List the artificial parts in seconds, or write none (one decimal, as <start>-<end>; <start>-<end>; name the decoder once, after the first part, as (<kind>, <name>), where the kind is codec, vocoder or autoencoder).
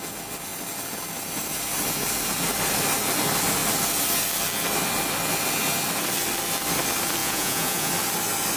7.2-7.9 (vocoder, Vocos)